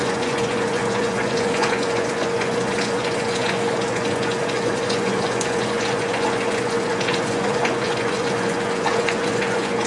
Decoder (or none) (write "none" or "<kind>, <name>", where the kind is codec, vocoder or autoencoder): vocoder, Vocos